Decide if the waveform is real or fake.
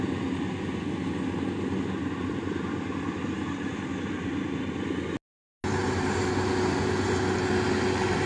real